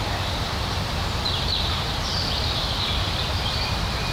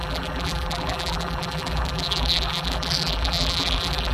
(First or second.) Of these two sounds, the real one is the first